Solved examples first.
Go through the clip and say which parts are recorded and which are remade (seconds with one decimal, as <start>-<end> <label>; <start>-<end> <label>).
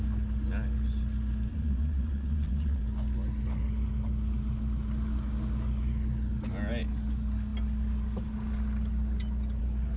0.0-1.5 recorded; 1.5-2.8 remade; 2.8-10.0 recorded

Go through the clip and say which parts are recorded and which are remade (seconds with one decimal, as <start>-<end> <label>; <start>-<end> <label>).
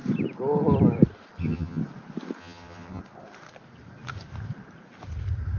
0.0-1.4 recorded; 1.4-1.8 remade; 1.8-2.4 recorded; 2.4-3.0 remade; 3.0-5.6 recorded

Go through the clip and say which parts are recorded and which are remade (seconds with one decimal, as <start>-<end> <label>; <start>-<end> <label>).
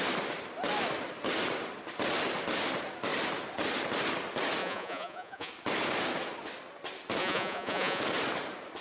0.0-4.6 recorded; 4.6-5.5 remade; 5.5-7.2 recorded; 7.2-8.0 remade; 8.0-8.8 recorded